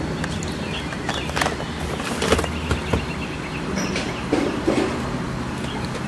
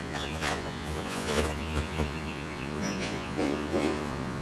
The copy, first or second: second